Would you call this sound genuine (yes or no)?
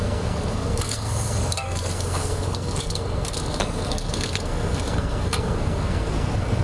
no